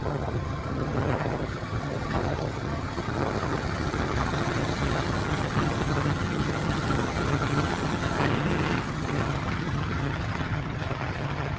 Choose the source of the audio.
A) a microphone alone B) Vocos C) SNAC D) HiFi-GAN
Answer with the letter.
D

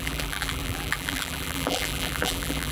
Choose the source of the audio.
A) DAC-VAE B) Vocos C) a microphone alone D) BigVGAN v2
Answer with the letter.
D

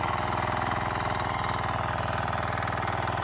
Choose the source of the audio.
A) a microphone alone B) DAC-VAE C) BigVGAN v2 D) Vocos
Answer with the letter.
A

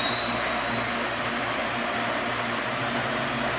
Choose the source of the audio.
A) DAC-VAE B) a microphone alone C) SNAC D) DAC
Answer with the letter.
B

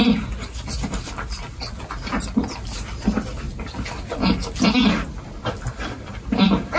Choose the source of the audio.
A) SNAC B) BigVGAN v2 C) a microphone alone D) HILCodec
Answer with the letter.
C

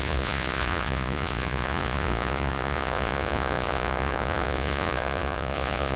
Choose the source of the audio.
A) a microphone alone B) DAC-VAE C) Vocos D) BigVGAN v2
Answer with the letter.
C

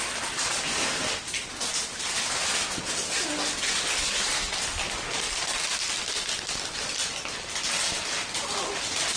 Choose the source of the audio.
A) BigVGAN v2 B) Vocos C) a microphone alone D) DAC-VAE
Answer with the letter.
C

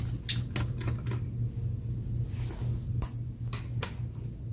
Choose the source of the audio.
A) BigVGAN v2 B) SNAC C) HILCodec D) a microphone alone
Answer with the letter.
D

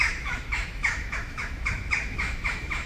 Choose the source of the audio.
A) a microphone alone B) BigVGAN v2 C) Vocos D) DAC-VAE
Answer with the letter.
D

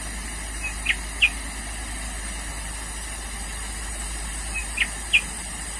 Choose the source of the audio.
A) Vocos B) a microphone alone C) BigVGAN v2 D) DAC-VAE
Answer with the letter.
B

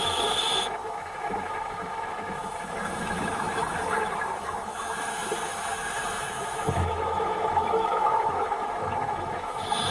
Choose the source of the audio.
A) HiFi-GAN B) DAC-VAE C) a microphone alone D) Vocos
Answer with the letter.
B